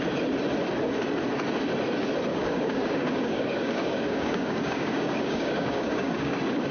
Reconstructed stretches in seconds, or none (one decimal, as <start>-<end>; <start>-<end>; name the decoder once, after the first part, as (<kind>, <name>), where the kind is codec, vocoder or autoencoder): 2.3-6.3 (codec, DAC)